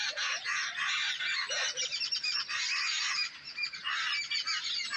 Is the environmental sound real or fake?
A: real